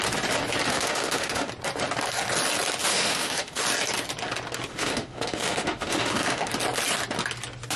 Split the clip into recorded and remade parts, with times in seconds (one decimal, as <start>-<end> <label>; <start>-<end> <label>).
0.0-0.7 recorded; 0.7-1.5 remade; 1.5-2.8 recorded; 2.8-3.6 remade; 3.6-4.7 recorded; 4.7-6.5 remade; 6.5-7.8 recorded